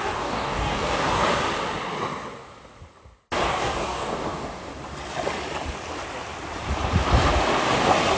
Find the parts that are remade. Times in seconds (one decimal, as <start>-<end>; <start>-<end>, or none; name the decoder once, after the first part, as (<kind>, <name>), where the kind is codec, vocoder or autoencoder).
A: 0.0-1.2 (codec, DAC); 3.5-4.7